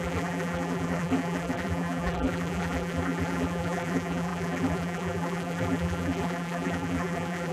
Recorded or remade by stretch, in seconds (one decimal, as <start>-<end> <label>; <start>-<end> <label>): 0.0-7.5 remade